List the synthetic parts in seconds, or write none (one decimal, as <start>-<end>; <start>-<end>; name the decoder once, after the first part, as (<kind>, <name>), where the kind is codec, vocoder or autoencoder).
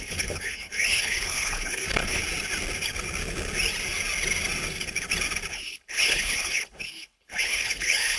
0.0-2.2 (codec, HILCodec); 5.5-8.2